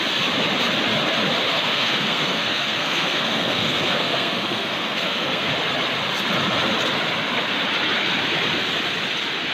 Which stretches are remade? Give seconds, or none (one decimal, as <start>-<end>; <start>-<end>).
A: 1.5-5.5